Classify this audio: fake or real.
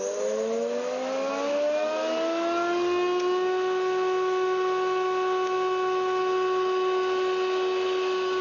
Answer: real